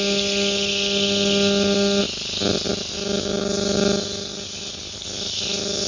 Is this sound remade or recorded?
recorded